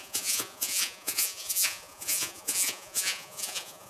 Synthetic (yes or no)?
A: yes